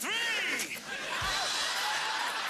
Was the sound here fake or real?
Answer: real